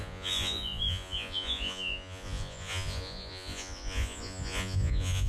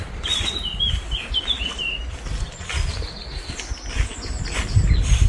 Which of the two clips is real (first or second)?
second